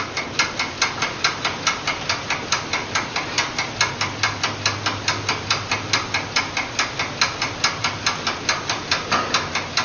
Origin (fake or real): real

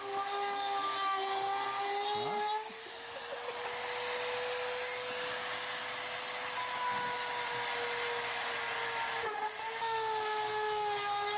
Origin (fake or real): real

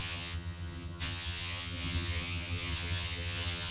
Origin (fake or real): fake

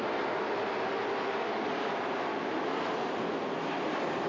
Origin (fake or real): real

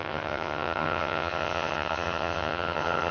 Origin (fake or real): fake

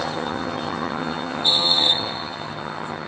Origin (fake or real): fake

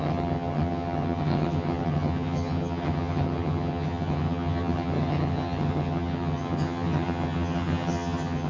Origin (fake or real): fake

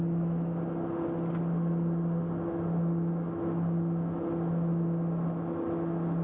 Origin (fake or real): real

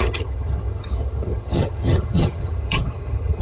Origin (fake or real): fake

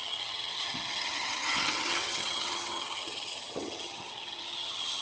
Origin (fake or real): fake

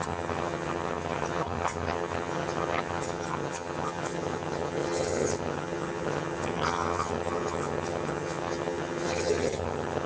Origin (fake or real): fake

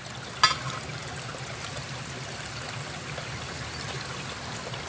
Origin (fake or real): real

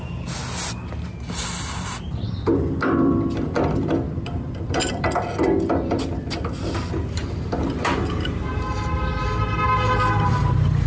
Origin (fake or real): real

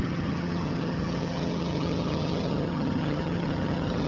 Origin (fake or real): fake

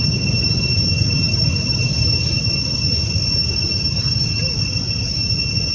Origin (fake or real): real